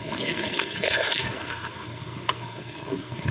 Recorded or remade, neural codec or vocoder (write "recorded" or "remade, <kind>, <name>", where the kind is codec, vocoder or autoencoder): remade, codec, SNAC